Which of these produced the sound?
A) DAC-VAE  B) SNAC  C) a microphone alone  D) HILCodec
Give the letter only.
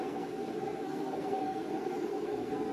B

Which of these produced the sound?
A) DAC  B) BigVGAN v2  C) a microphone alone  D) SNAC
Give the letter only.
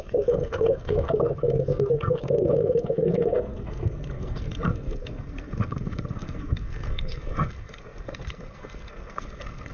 D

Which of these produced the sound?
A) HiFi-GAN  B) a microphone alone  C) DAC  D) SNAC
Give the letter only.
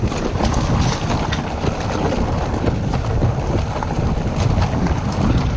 B